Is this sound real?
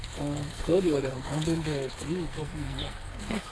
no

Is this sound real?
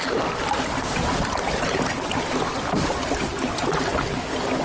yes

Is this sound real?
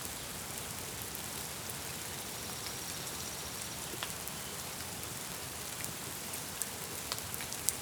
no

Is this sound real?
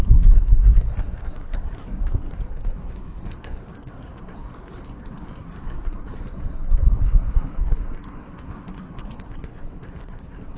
no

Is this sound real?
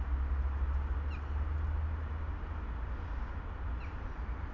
yes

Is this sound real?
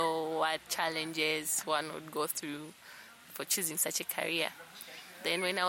yes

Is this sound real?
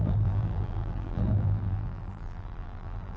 no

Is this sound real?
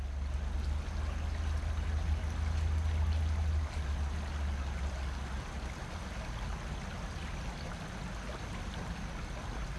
yes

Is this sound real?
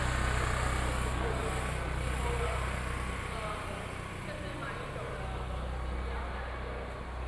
yes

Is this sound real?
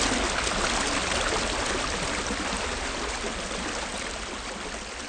yes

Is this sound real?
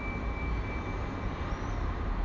yes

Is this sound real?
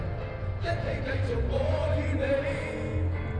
yes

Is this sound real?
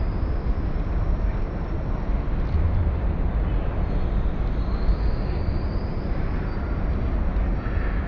yes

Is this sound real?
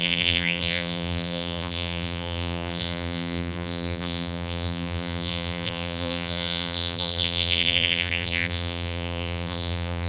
no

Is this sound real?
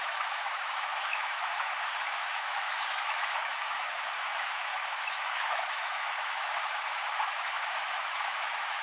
no